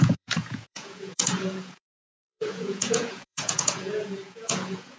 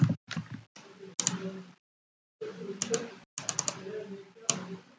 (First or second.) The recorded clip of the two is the second